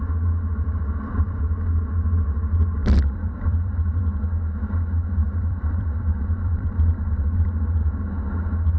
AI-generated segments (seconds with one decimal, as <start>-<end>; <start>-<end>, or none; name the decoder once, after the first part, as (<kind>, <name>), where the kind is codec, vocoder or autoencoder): 0.5-1.4 (vocoder, BigVGAN v2); 2.8-4.0; 5.2-7.8